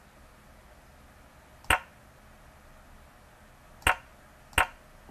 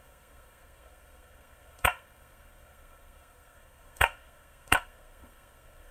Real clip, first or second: first